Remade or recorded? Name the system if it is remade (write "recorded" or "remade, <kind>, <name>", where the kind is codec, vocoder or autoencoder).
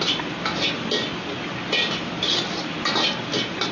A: recorded